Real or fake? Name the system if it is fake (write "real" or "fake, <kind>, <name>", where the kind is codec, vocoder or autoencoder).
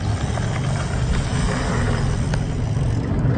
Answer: real